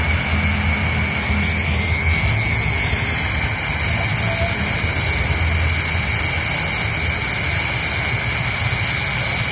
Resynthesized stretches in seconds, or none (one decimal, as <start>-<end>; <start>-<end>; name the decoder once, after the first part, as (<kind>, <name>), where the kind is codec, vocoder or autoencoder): none